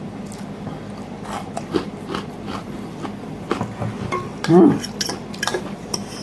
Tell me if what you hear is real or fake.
fake